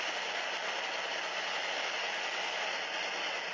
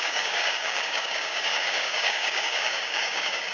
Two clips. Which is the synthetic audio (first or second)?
second